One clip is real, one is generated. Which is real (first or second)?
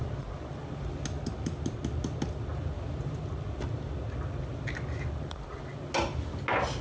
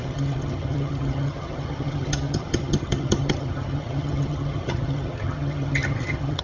first